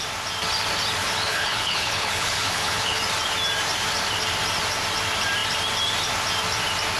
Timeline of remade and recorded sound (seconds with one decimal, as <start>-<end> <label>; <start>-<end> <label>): 0.0-1.0 recorded; 1.0-3.0 remade; 3.0-7.0 recorded